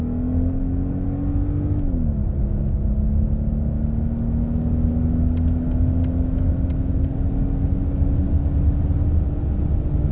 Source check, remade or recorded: recorded